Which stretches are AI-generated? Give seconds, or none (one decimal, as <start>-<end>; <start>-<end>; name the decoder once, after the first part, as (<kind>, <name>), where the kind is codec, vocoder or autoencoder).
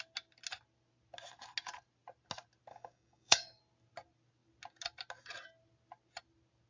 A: 2.7-3.6 (codec, DAC)